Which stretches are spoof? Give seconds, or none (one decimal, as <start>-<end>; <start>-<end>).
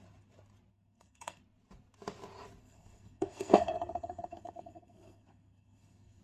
0.7-1.4; 2.6-6.2